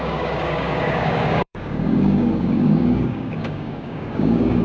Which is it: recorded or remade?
remade